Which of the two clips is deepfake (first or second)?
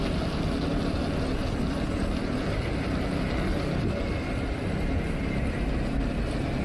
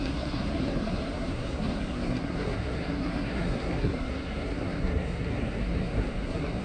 second